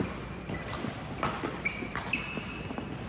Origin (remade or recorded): recorded